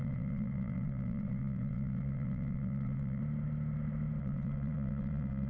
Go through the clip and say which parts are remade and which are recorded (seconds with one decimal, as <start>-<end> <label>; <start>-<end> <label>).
0.0-3.2 remade; 3.2-4.2 recorded; 4.2-5.5 remade